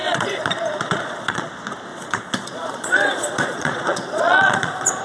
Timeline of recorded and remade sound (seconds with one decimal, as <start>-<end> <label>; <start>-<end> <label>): 0.0-1.5 remade; 1.5-1.9 recorded; 1.9-5.0 remade

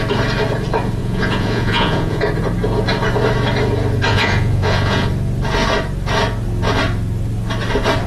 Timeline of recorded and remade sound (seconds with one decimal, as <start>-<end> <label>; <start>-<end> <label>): 0.0-1.0 recorded; 1.0-2.2 remade; 2.2-4.1 recorded; 4.1-5.1 remade; 5.1-8.1 recorded

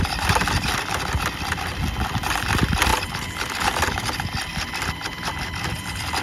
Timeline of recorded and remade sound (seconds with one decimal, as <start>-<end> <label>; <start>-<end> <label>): 0.0-6.2 recorded

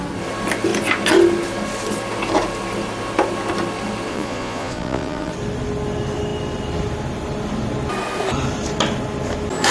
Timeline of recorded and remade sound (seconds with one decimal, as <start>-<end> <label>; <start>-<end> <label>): 0.0-4.1 recorded; 4.1-5.3 remade; 5.3-9.7 recorded